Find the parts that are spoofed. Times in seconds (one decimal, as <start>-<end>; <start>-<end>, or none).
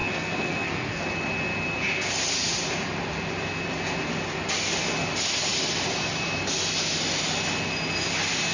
0.0-1.0